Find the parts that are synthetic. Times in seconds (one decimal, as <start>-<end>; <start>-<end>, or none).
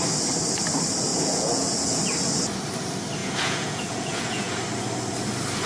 1.1-2.0; 3.2-4.5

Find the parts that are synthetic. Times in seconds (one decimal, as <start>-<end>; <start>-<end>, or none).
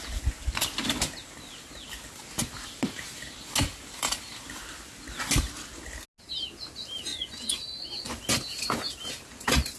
7.1-8.2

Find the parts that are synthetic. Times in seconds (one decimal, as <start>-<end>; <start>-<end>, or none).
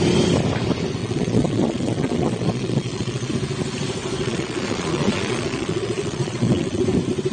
1.0-3.3; 4.2-6.8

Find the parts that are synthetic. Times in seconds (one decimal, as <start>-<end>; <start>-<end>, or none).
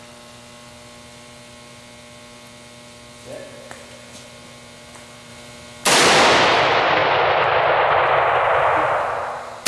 none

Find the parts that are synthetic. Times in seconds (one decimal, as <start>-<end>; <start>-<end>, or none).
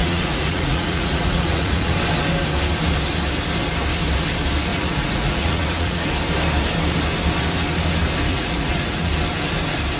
0.0-1.9; 4.7-6.1; 8.3-9.1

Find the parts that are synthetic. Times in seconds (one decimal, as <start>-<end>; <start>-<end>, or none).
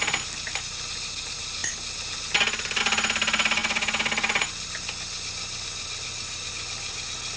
none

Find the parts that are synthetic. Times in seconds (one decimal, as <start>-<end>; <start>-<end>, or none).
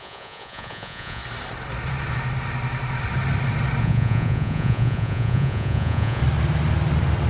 0.0-1.2; 3.8-6.2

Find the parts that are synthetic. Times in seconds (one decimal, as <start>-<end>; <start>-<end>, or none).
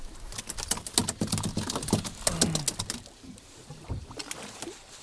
none